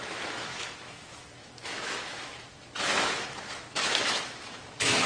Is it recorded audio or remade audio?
remade